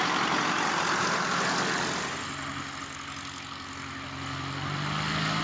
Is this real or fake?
real